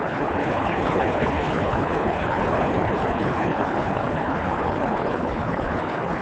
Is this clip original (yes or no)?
no